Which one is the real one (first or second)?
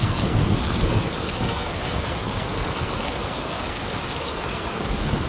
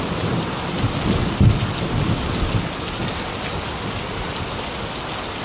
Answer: second